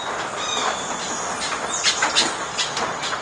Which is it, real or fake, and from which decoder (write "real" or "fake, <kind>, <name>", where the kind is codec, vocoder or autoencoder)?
real